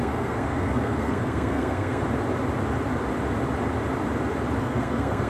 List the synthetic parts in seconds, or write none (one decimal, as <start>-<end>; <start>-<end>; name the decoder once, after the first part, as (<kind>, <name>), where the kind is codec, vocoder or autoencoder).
0.0-2.0 (codec, SNAC); 4.6-5.3